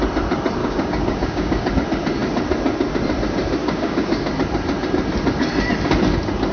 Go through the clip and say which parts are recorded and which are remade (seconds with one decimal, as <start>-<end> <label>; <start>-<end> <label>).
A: 0.0-0.6 recorded; 0.6-1.7 remade; 1.7-3.6 recorded; 3.6-4.3 remade; 4.3-6.5 recorded